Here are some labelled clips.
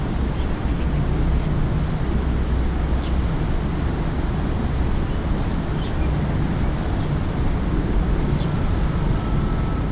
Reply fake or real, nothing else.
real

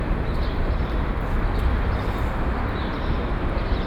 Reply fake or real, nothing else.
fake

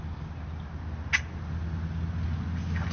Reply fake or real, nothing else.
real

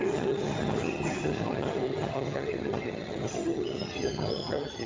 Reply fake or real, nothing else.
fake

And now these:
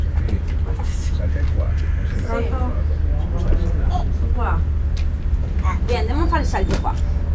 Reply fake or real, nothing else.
real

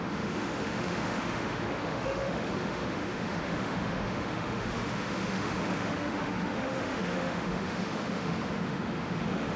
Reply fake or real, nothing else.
fake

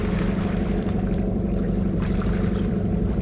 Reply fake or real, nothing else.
fake